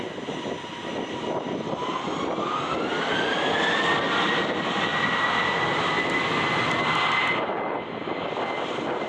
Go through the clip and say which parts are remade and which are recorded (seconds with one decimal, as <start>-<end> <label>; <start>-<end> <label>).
0.0-9.1 recorded